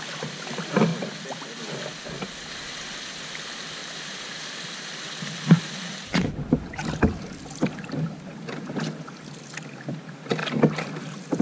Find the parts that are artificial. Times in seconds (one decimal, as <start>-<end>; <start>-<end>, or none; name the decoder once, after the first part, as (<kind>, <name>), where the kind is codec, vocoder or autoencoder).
0.9-1.6 (vocoder, BigVGAN v2); 3.8-5.7; 10.4-11.4